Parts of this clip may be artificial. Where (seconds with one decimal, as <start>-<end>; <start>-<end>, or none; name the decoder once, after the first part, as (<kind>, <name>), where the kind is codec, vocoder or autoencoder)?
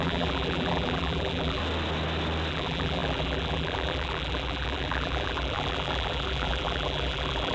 0.0-1.6 (vocoder, BigVGAN v2); 2.5-7.5